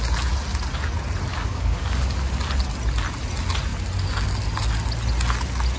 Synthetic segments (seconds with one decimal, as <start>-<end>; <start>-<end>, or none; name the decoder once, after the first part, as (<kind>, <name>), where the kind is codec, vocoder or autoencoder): 1.3-2.3 (codec, DAC)